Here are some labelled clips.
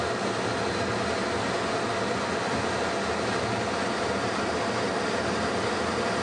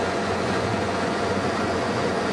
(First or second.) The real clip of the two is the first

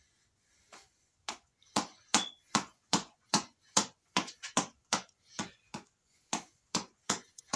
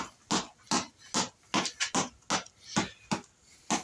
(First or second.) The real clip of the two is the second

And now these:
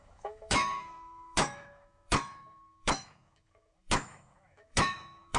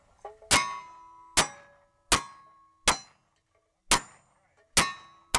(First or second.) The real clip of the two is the second